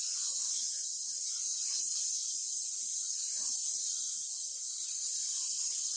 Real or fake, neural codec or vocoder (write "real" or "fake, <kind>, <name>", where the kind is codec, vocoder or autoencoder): real